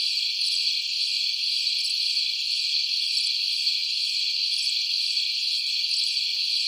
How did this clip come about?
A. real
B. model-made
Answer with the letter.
A